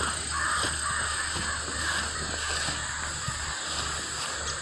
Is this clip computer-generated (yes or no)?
no